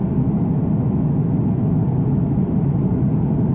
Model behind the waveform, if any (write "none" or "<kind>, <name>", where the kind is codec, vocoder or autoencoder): none